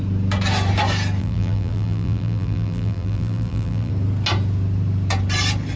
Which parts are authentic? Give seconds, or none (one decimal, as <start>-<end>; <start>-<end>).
0.0-1.2; 3.9-5.8